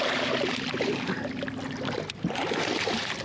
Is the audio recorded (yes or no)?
yes